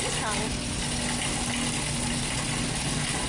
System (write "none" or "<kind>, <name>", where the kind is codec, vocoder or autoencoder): none